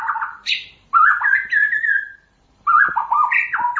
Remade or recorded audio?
remade